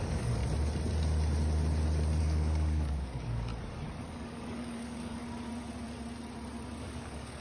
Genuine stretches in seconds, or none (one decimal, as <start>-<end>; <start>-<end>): 0.4-2.2; 3.5-4.0; 5.2-6.8